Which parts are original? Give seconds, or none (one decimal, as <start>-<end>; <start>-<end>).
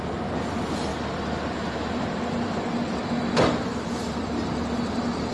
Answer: 0.0-0.9; 2.2-3.0; 4.3-5.3